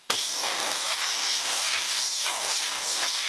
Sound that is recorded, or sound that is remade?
remade